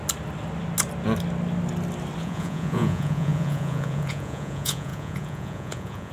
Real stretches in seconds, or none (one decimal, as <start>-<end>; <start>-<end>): 0.0-2.2